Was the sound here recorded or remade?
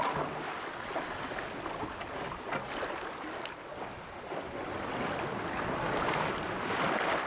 recorded